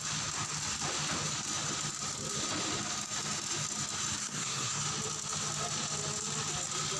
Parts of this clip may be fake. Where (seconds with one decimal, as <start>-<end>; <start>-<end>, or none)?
4.2-4.8